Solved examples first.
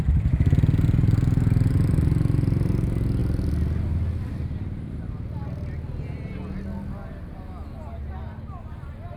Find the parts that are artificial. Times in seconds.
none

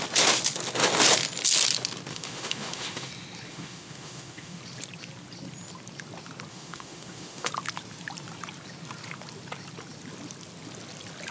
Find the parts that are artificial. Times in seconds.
2.1-3.1 (autoencoder, DAC-VAE); 3.5-4.6; 6.5-7.5

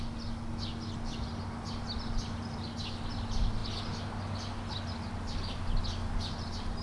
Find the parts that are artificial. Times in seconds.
none

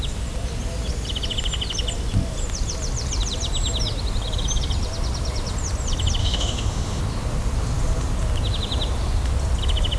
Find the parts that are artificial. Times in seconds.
6.2-7.0 (autoencoder, DAC-VAE)